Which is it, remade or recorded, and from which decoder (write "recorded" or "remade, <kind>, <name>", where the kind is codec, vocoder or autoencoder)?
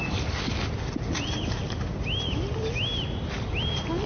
recorded